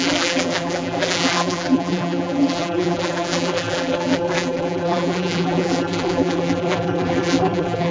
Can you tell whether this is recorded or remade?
remade